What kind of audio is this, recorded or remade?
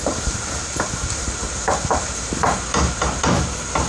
remade